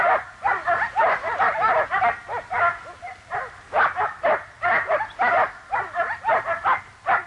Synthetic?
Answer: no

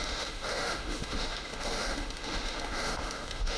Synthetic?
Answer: yes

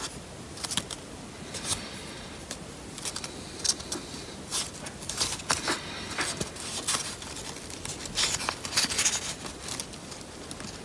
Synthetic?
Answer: no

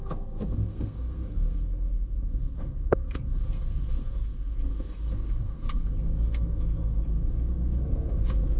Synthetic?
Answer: yes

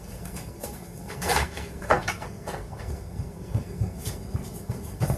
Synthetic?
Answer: yes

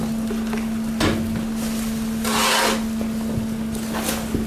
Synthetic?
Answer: no